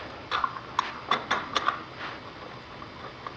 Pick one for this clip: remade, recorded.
recorded